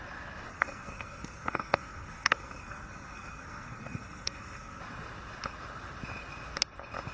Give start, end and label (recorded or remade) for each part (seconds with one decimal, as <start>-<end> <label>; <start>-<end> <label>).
0.0-0.5 recorded; 0.5-4.8 remade; 4.8-7.1 recorded